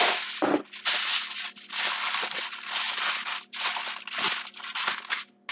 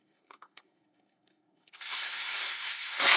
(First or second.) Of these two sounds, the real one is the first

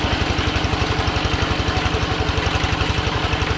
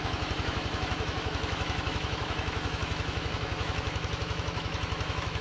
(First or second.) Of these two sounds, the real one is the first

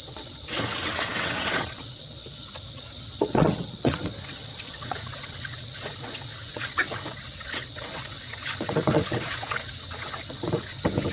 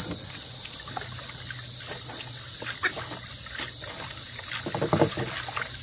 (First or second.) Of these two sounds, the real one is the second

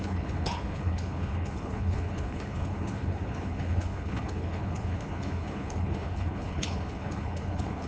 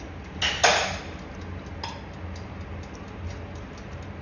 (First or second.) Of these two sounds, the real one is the second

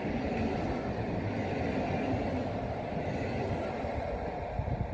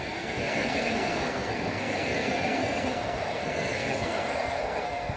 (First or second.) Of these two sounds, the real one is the first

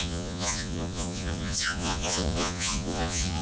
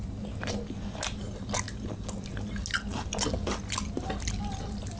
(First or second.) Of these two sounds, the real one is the second